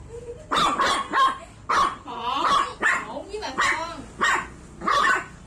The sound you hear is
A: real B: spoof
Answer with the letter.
A